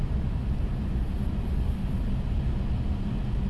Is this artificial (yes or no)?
no